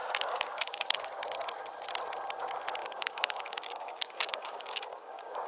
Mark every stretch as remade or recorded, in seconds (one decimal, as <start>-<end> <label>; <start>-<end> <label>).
0.0-1.0 remade; 1.0-2.8 recorded; 2.8-5.5 remade